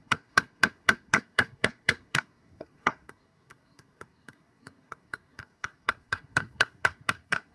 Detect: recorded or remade remade